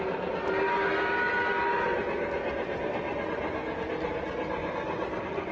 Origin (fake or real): real